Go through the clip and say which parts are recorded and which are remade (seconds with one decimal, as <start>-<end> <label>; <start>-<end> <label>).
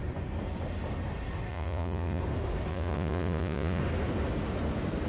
0.0-1.5 recorded; 1.5-2.2 remade; 2.2-2.7 recorded; 2.7-3.8 remade; 3.8-5.1 recorded